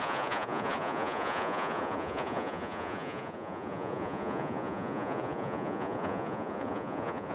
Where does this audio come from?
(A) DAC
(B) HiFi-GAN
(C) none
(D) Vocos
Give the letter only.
D